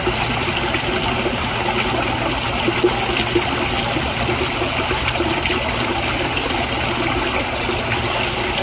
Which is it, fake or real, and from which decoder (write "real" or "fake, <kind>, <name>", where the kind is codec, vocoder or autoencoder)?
real